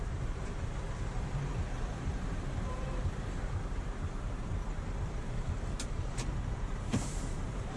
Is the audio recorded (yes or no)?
no